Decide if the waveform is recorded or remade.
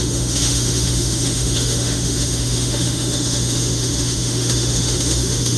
remade